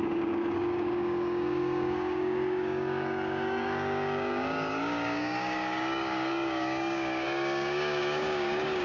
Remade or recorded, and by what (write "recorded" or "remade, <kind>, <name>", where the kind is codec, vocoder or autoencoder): remade, codec, DAC